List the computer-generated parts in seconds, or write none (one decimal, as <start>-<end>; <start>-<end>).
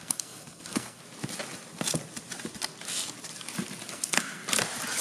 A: 0.0-1.0; 3.9-4.4